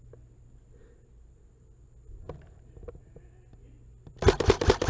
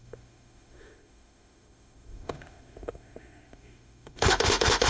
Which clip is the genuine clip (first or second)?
first